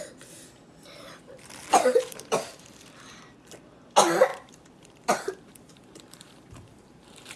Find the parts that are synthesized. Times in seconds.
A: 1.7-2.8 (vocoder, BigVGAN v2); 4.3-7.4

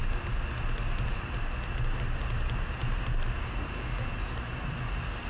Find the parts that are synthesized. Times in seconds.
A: 2.8-3.5 (vocoder, BigVGAN v2); 4.2-4.8

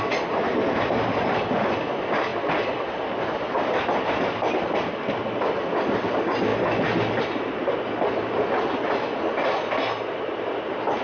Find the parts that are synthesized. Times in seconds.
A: none